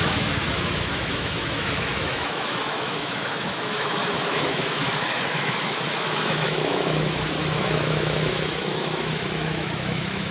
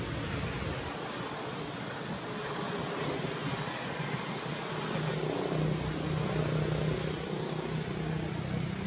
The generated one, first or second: first